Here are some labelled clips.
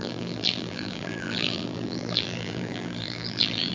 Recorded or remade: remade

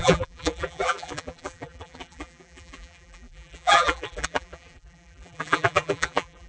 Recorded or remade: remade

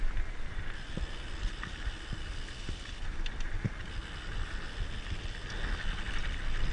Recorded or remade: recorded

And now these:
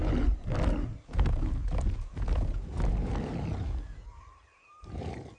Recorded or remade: recorded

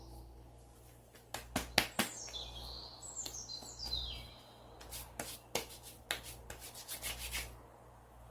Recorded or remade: recorded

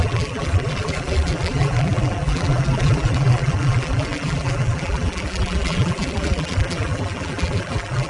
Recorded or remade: remade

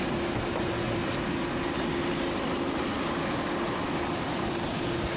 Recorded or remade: remade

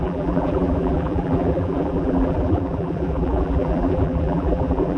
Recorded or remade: remade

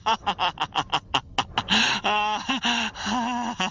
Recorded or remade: recorded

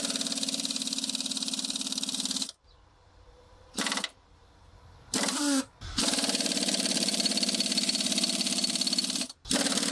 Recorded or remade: remade